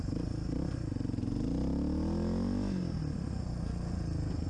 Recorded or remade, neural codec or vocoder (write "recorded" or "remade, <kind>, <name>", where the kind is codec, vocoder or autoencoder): recorded